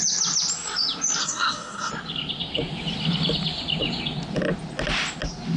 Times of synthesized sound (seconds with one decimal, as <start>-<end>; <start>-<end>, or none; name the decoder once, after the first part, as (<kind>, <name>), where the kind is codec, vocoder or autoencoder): 1.2-1.9 (codec, SNAC)